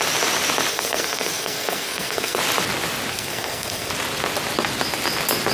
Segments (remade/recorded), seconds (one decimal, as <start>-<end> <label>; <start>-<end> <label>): 0.0-0.7 recorded; 0.7-2.4 remade; 2.4-3.1 recorded; 3.1-3.9 remade; 3.9-5.5 recorded